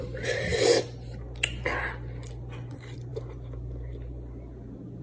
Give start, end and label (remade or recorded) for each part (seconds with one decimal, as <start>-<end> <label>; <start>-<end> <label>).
0.0-0.5 remade; 0.5-2.7 recorded; 2.7-3.1 remade; 3.1-5.0 recorded